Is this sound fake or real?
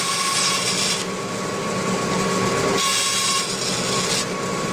real